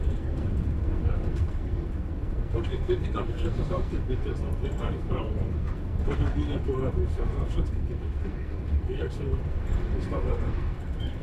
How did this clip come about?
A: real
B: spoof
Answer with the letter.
B